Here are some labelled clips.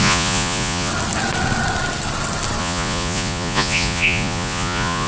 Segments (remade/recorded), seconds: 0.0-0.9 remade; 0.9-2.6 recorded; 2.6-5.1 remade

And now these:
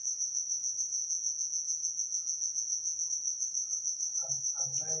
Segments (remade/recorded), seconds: 0.0-1.0 recorded; 1.0-3.1 remade; 3.1-5.0 recorded

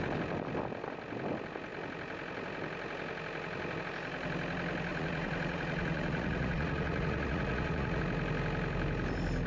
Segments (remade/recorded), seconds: 0.0-4.9 recorded; 4.9-8.0 remade; 8.0-9.5 recorded

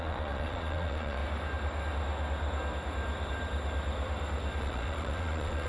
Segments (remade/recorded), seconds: 0.0-1.2 remade; 1.2-4.6 recorded; 4.6-5.7 remade

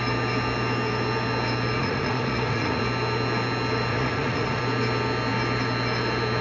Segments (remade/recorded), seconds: 0.0-1.8 recorded; 1.8-2.8 remade; 2.8-3.9 recorded; 3.9-4.6 remade; 4.6-6.4 recorded